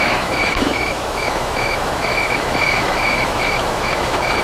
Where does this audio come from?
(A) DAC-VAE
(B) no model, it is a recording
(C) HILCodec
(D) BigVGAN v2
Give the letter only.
A